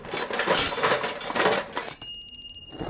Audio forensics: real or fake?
real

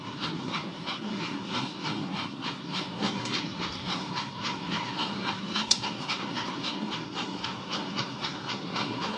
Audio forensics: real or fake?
fake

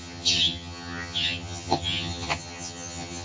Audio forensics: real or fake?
fake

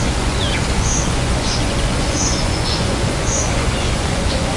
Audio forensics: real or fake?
fake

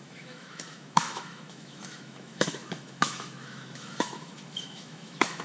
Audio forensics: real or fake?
fake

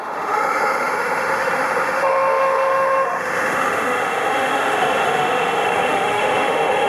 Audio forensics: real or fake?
fake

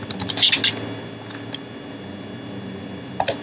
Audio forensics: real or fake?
real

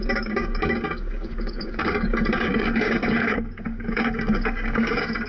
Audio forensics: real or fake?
fake